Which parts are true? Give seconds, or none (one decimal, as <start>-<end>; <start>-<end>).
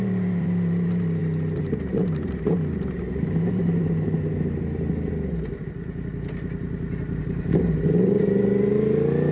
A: 4.3-7.2